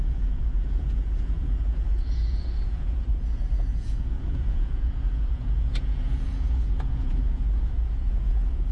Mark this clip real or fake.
fake